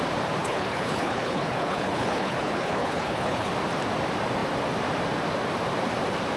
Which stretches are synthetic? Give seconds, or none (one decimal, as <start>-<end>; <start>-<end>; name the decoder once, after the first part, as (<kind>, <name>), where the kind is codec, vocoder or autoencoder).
0.4-3.5 (codec, HILCodec)